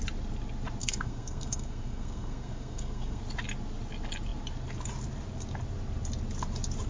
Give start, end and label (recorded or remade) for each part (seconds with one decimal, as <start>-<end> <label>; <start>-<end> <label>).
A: 0.0-0.8 recorded; 0.8-3.2 remade; 3.2-6.9 recorded